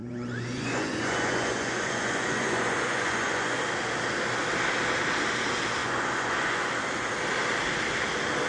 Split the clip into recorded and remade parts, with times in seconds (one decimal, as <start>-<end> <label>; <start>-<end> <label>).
0.0-3.6 remade; 3.6-5.8 recorded; 5.8-6.7 remade; 6.7-8.5 recorded

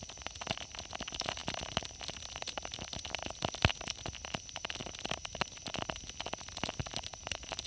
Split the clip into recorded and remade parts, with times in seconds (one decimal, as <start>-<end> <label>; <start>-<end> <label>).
0.0-7.7 recorded